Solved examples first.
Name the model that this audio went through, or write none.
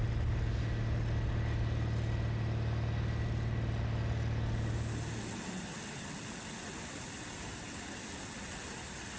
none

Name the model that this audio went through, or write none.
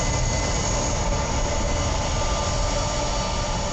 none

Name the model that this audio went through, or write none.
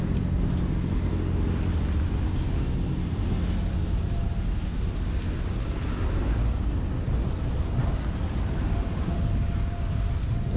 none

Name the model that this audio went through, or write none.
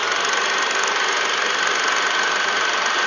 none